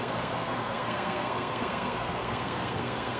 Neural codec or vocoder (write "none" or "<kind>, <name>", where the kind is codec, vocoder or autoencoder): codec, SNAC